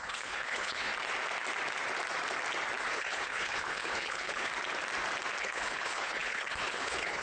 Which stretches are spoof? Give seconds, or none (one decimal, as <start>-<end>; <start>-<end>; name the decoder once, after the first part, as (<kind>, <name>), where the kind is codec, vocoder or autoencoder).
0.0-0.9 (codec, HILCodec); 2.9-4.5; 5.4-7.2